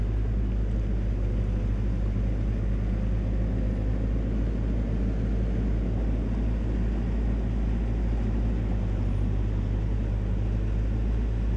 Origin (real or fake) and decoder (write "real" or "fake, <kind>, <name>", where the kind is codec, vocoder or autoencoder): real